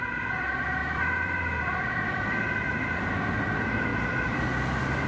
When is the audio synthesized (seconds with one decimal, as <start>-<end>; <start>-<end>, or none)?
0.8-2.2; 3.9-4.4